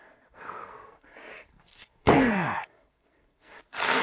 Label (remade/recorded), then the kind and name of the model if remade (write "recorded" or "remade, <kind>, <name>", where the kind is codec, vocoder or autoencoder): remade, codec, SNAC